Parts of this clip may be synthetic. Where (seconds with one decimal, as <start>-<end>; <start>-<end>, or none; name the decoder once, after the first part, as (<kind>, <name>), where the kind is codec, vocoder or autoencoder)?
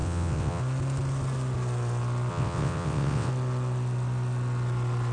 0.0-0.6 (vocoder, WaveNeXt); 2.3-3.3